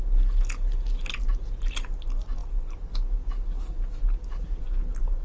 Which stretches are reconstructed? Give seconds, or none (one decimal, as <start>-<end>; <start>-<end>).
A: none